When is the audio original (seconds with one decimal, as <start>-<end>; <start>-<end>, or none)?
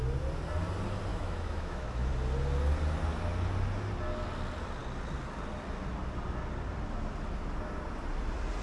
0.0-1.1; 2.1-8.6